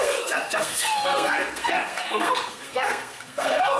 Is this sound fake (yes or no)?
yes